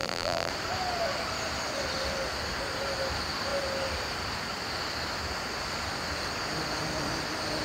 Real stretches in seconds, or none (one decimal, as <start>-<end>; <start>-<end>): 0.5-7.6